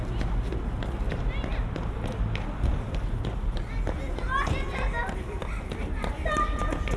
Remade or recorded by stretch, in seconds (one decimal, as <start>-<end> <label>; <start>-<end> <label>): 0.0-7.0 recorded